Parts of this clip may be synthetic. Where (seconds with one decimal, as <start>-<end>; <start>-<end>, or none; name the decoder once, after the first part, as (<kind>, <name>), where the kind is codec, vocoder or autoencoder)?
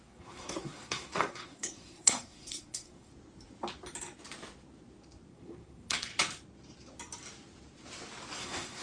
0.0-3.1 (codec, SNAC); 5.3-6.1; 8.3-8.8